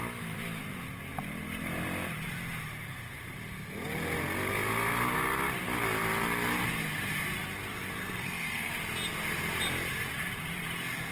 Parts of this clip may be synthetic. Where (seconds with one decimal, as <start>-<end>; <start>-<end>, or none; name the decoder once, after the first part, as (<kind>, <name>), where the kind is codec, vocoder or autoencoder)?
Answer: 8.0-8.7 (codec, SNAC)